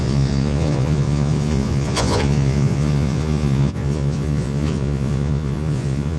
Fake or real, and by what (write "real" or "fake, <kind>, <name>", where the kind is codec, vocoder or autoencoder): fake, vocoder, Vocos